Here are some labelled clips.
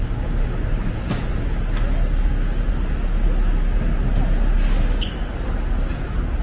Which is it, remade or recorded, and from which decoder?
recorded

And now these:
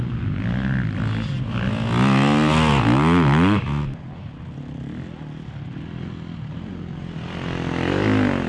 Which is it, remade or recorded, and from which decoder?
recorded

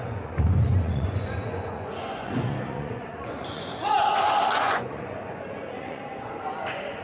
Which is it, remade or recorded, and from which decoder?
remade, vocoder, Vocos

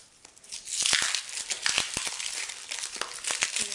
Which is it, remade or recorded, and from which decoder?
recorded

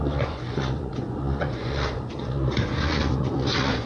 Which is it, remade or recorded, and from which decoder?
remade, vocoder, Vocos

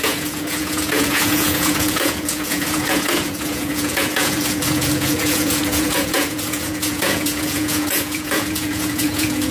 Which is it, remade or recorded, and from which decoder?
remade, vocoder, Vocos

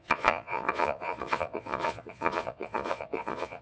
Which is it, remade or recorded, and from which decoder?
remade, vocoder, Vocos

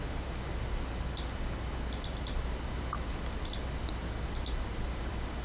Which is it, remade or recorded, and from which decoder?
recorded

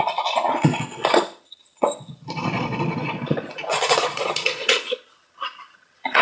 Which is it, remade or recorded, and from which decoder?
remade, vocoder, Vocos